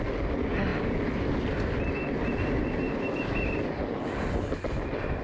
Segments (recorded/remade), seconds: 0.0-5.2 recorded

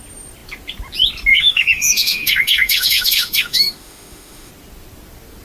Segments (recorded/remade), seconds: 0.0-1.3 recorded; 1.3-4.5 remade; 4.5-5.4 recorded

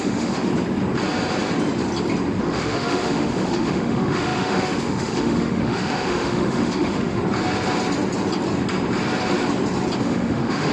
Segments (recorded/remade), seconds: 0.0-0.5 remade; 0.5-2.4 recorded; 2.4-7.2 remade; 7.2-10.0 recorded; 10.0-10.7 remade

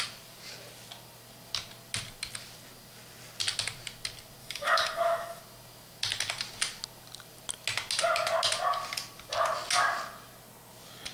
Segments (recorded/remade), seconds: 0.0-4.4 recorded; 4.4-5.4 remade; 5.4-11.1 recorded

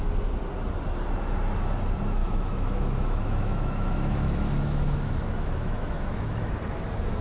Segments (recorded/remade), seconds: 0.0-2.2 recorded; 2.2-6.5 remade; 6.5-7.2 recorded

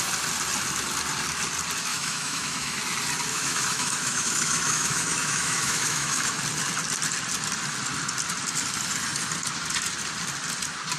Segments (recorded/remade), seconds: 0.0-1.9 recorded; 1.9-2.8 remade; 2.8-3.3 recorded; 3.3-6.4 remade; 6.4-11.0 recorded

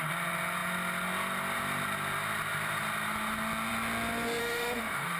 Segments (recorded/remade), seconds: 0.0-4.4 recorded; 4.4-5.2 remade

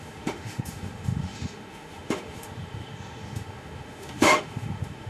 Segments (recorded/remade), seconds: 0.0-5.1 remade